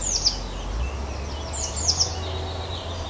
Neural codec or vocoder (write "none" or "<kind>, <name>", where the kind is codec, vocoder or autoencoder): none